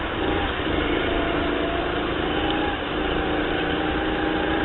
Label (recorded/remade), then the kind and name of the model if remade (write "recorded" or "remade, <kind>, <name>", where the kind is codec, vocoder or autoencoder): recorded